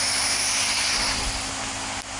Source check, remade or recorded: recorded